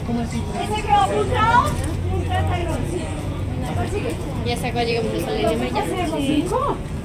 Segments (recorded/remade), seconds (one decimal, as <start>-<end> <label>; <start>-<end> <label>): 0.0-2.6 recorded; 2.6-7.0 remade